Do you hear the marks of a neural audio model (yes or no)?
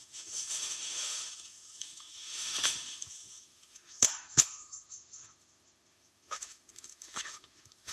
yes